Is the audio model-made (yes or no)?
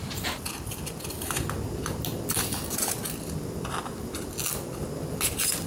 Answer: no